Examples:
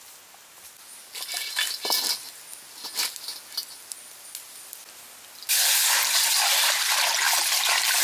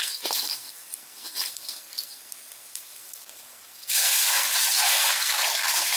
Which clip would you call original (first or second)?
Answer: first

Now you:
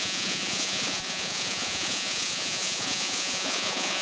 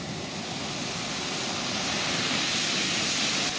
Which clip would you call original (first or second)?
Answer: second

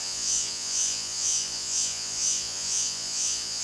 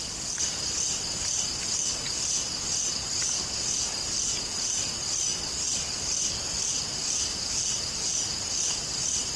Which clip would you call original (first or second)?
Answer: second